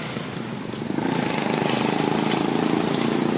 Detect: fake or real real